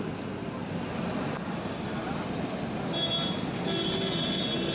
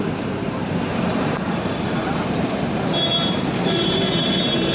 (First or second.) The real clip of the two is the first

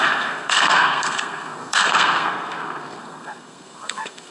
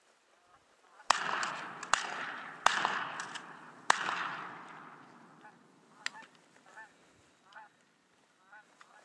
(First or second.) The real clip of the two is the second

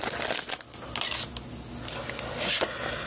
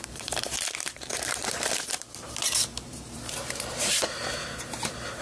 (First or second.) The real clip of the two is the first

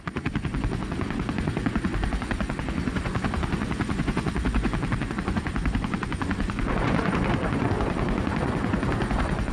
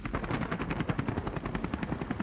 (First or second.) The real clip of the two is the second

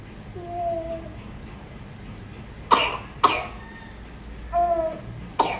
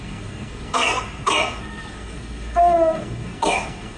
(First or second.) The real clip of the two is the first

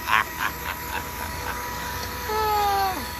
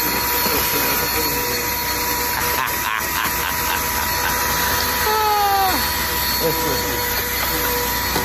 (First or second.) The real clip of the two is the second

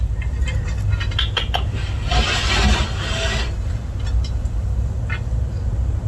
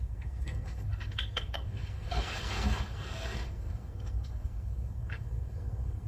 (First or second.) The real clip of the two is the first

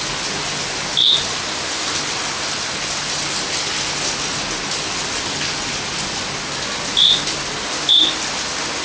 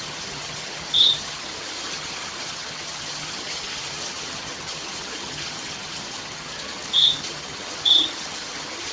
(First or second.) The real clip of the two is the first